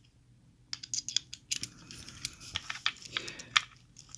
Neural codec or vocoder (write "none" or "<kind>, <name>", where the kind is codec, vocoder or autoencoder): none